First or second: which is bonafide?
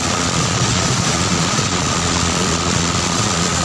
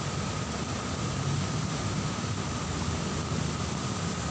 second